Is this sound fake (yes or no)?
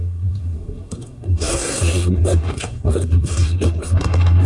yes